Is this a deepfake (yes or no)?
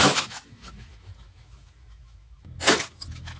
yes